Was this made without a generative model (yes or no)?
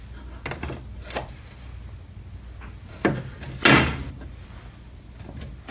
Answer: yes